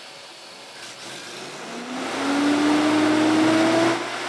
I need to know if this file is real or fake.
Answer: real